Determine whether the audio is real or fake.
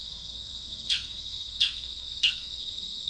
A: fake